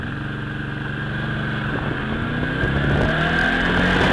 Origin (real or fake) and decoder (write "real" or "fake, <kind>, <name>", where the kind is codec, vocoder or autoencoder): real